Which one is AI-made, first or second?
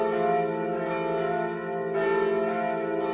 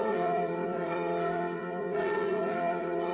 second